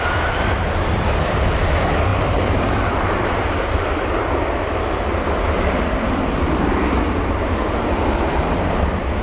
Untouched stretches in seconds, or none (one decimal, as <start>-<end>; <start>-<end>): 0.0-2.1; 4.4-9.2